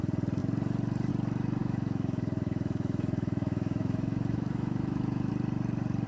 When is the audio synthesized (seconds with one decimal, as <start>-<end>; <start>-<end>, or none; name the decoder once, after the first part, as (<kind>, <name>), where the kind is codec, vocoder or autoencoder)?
1.6-5.3 (autoencoder, DAC-VAE)